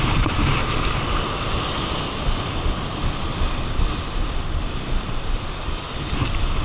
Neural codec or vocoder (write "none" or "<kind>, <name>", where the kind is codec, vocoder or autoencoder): none